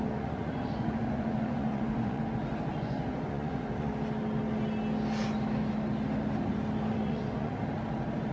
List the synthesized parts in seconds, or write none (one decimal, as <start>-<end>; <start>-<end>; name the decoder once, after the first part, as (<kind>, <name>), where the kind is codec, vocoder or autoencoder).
0.0-2.2 (vocoder, Vocos); 2.7-3.9; 6.9-7.6